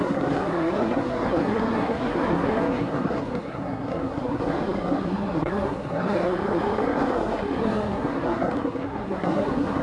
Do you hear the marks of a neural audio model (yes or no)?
yes